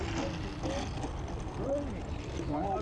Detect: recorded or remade recorded